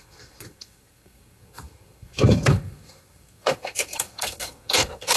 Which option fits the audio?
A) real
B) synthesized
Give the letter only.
B